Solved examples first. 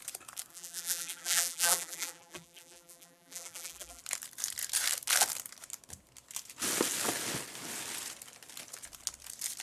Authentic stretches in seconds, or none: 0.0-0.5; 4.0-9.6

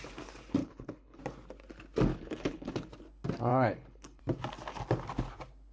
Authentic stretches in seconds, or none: 0.0-0.6; 1.2-2.1; 2.9-3.5; 4.2-5.7

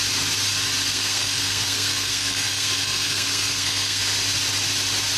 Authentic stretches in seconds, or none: 0.0-0.9; 4.0-5.2